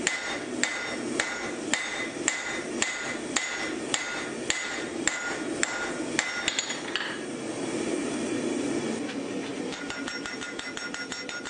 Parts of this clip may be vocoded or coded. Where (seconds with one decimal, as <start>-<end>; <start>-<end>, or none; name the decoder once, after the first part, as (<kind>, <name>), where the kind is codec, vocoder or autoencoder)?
9.5-10.3 (vocoder, BigVGAN v2)